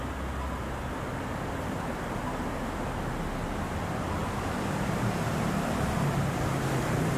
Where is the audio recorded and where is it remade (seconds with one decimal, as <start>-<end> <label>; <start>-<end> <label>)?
0.0-4.2 recorded; 4.2-7.2 remade